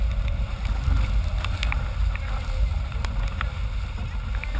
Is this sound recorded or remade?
recorded